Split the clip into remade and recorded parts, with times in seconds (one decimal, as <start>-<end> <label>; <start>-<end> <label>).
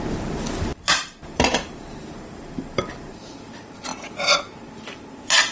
0.0-3.9 remade; 3.9-4.8 recorded; 4.8-5.5 remade